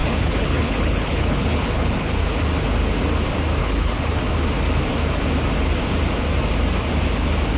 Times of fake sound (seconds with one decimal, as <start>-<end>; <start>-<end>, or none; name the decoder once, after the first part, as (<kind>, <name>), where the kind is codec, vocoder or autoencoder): 0.0-2.2 (codec, HILCodec); 3.6-4.2